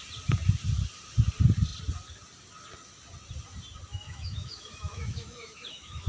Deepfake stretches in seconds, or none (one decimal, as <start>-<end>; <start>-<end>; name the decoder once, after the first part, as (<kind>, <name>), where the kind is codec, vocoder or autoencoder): 3.9-6.1 (autoencoder, DAC-VAE)